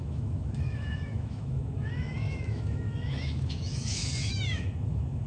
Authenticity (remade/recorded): remade